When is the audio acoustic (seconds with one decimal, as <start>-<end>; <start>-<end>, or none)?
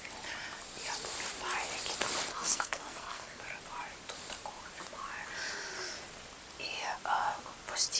0.0-2.3; 3.4-8.0